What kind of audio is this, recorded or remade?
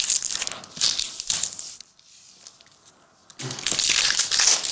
recorded